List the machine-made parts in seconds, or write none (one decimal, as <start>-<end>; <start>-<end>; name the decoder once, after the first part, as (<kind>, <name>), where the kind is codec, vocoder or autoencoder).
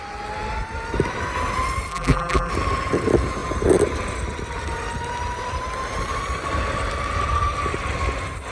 1.9-2.5 (vocoder, BigVGAN v2)